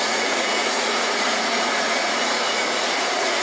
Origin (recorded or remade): remade